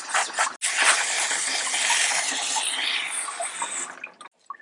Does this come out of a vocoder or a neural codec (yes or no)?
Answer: no